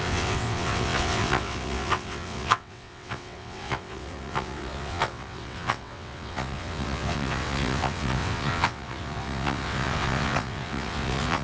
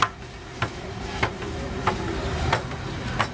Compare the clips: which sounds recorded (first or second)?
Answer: second